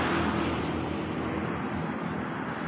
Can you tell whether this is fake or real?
real